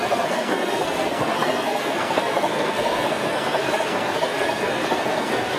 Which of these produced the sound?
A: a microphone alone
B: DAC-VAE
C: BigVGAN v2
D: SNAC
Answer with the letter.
D